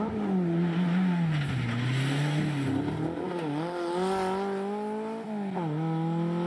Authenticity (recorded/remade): recorded